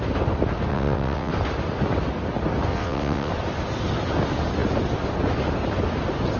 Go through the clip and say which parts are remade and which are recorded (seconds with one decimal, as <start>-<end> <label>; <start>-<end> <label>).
0.0-0.7 recorded; 0.7-1.3 remade; 1.3-2.7 recorded; 2.7-3.3 remade; 3.3-6.4 recorded